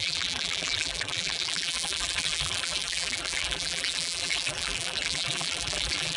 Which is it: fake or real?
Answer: fake